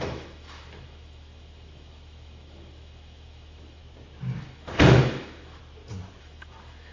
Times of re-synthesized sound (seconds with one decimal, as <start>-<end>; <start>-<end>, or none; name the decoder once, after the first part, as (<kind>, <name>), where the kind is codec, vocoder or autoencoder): 0.0-3.8 (autoencoder, DAC-VAE); 4.4-5.6; 6.2-6.9